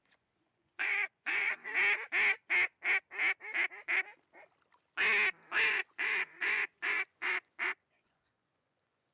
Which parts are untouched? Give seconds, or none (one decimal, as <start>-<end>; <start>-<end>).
1.7-5.7